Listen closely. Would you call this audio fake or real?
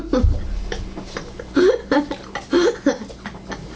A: real